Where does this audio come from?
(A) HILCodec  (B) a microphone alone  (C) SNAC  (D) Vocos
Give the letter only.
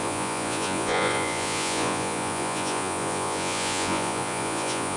D